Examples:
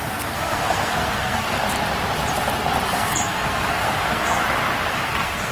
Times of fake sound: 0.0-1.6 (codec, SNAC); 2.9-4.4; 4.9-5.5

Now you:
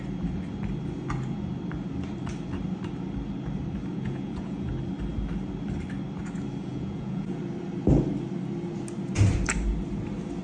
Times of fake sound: 3.9-4.7 (vocoder, Vocos); 6.7-7.4